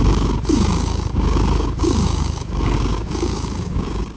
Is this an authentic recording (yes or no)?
no